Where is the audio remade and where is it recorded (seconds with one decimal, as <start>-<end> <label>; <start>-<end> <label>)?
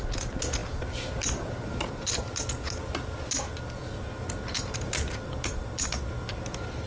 0.0-6.9 recorded